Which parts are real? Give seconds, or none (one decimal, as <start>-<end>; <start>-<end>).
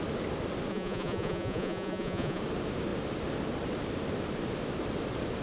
0.0-0.7; 2.4-5.4